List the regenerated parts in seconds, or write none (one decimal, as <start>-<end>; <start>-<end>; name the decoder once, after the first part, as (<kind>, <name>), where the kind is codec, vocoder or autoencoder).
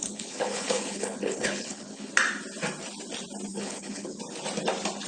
0.0-2.1 (codec, HILCodec); 3.5-4.2